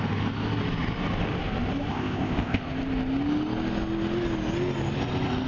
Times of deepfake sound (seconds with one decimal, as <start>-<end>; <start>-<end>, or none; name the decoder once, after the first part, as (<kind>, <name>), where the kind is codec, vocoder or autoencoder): 1.9-2.6 (codec, ZipCodec)